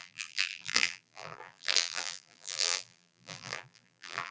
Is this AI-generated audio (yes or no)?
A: yes